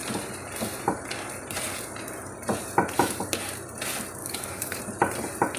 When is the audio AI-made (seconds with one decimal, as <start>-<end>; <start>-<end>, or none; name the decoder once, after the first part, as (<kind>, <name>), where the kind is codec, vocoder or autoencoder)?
4.2-4.8 (codec, DAC)